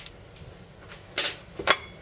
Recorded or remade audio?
recorded